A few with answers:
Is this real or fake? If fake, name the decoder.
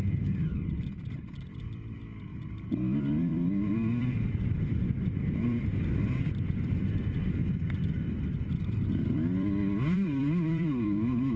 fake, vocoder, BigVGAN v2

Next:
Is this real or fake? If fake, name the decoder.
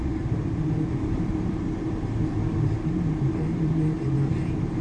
fake, vocoder, BigVGAN v2